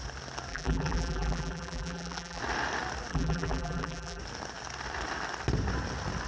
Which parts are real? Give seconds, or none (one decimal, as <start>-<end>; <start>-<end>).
0.0-0.5; 2.4-3.1; 4.2-6.3